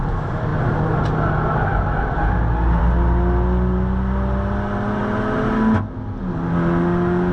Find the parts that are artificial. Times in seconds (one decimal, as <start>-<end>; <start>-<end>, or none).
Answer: none